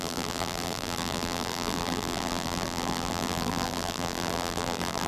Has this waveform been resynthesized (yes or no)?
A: yes